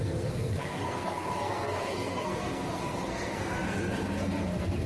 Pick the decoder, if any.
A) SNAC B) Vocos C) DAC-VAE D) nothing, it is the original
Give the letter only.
A